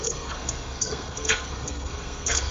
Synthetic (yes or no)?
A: yes